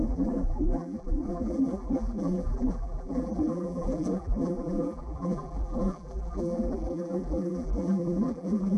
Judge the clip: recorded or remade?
remade